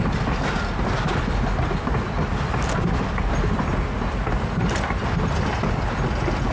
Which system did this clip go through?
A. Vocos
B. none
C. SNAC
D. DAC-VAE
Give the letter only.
B